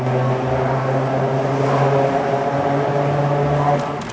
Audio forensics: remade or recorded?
recorded